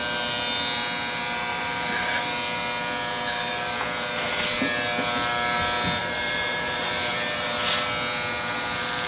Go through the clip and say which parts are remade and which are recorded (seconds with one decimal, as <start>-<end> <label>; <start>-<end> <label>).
0.0-1.5 recorded; 1.5-2.2 remade; 2.2-6.0 recorded; 6.0-7.1 remade; 7.1-9.1 recorded